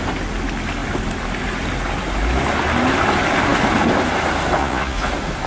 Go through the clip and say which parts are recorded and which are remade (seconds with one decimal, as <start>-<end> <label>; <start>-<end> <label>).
0.0-4.6 recorded; 4.6-5.1 remade; 5.1-5.5 recorded